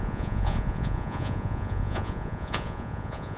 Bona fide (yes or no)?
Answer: no